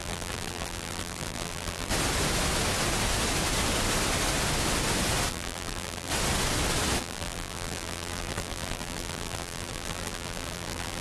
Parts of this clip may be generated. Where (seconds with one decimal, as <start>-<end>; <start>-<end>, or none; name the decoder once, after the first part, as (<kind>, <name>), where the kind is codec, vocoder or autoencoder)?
0.0-1.9 (vocoder, BigVGAN v2); 5.3-6.1; 7.0-11.0